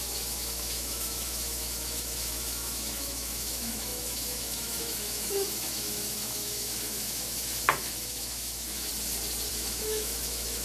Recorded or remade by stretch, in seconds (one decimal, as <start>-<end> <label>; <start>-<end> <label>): 0.0-8.9 remade; 8.9-9.5 recorded; 9.5-10.6 remade